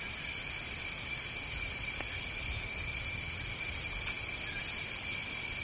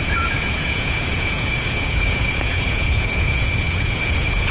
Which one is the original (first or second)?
first